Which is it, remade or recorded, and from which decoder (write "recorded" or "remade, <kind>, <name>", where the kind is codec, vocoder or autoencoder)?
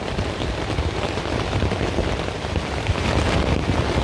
recorded